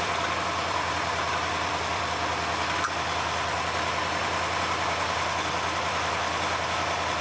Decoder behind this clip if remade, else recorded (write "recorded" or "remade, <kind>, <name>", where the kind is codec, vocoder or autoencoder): recorded